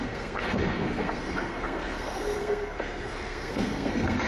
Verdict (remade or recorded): remade